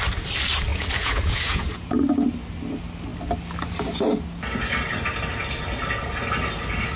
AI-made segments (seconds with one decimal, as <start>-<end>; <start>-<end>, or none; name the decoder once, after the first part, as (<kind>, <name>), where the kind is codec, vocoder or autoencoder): 0.7-1.9 (vocoder, Vocos)